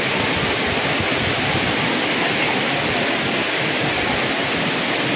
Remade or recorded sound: recorded